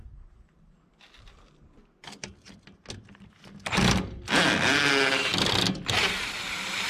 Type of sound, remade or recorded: recorded